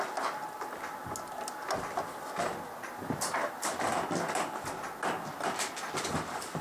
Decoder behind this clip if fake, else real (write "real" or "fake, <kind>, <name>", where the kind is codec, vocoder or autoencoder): real